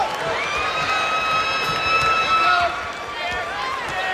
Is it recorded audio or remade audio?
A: recorded